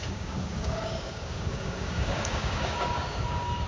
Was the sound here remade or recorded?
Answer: remade